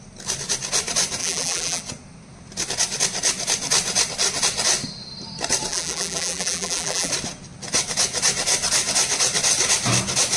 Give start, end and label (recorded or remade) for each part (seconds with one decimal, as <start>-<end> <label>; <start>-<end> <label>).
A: 0.0-1.2 recorded; 1.2-1.8 remade; 1.8-5.7 recorded; 5.7-7.1 remade; 7.1-10.4 recorded

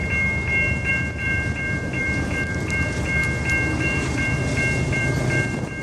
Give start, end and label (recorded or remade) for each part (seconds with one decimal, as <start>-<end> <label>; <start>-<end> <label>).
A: 0.0-0.9 recorded; 0.9-3.2 remade; 3.2-3.7 recorded; 3.7-4.4 remade; 4.4-4.9 recorded; 4.9-5.8 remade

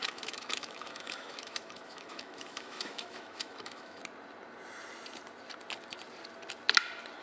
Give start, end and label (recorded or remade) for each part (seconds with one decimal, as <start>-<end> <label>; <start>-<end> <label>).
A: 0.0-4.0 remade; 4.0-7.2 recorded